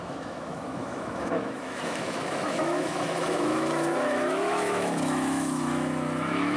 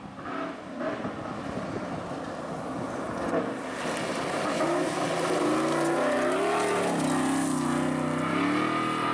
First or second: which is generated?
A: first